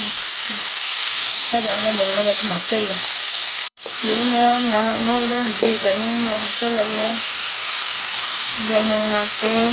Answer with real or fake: fake